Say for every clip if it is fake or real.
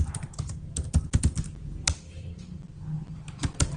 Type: real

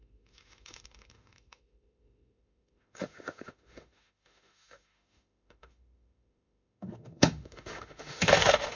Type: fake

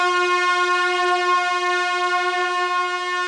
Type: real